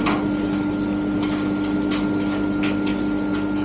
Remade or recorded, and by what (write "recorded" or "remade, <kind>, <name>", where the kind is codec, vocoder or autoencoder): recorded